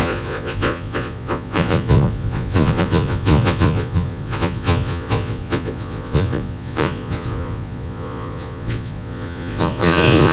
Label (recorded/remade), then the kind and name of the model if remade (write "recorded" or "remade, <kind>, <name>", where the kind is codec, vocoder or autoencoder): remade, vocoder, Vocos